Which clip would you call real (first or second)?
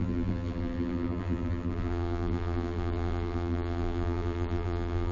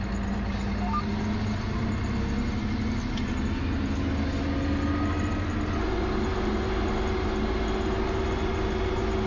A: second